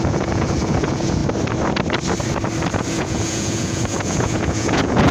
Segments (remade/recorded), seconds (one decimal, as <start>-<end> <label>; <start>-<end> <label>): 0.0-1.2 remade; 1.2-2.7 recorded; 2.7-5.1 remade